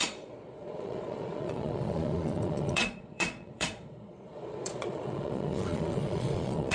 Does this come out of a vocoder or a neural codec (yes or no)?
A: yes